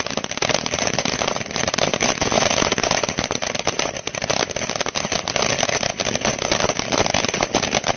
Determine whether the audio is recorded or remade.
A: recorded